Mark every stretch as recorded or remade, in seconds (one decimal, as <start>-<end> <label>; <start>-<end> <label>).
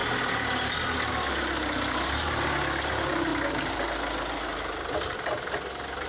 0.0-6.1 recorded